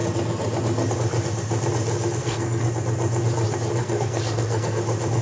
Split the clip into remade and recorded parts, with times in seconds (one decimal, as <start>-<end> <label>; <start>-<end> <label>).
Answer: 0.0-2.2 recorded; 2.2-2.7 remade; 2.7-3.8 recorded; 3.8-4.8 remade; 4.8-5.2 recorded